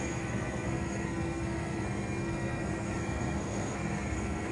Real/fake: fake